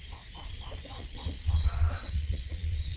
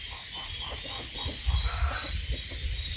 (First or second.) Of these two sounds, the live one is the second